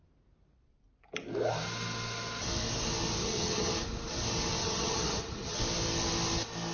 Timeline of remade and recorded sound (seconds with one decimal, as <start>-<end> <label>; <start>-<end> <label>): 0.0-3.2 recorded; 3.2-3.7 remade; 3.7-4.6 recorded; 4.6-5.6 remade; 5.6-6.7 recorded

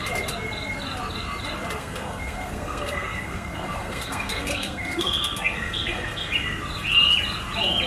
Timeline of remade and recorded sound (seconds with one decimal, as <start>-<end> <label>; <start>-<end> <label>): 0.0-1.8 recorded; 1.8-6.3 remade; 6.3-7.9 recorded